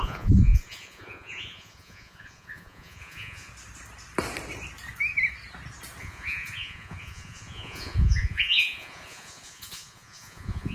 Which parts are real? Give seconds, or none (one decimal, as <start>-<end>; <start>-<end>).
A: 3.5-6.0